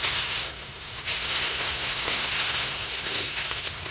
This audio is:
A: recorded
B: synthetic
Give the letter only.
B